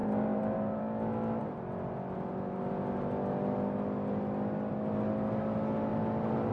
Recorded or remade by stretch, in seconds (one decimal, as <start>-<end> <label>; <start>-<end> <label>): 0.0-0.8 remade; 0.8-6.5 recorded